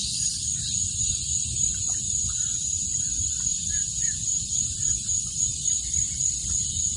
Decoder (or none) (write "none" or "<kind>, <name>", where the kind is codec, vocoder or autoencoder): none